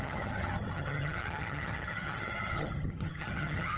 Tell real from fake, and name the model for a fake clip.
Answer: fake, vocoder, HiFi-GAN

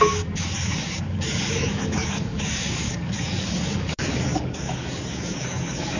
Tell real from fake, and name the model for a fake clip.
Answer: fake, codec, DAC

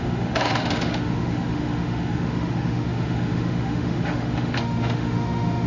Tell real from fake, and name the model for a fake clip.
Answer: fake, autoencoder, DAC-VAE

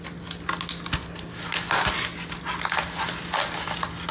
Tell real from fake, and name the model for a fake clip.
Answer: real